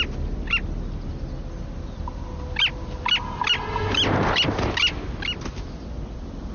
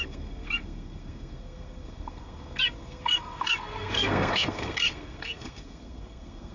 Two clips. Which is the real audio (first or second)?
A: first